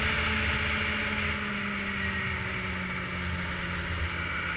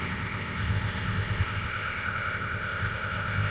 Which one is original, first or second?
first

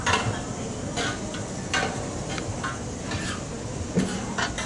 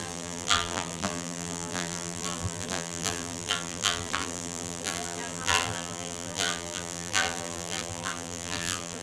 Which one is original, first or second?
first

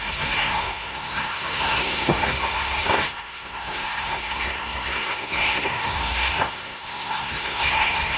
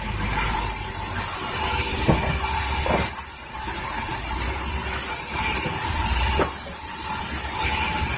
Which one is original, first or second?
second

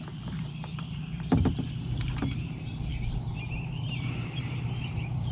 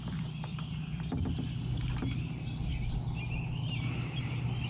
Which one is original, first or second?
second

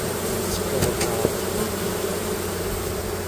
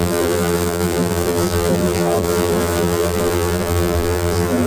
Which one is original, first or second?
first